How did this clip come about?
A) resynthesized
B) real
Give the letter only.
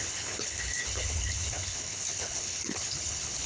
A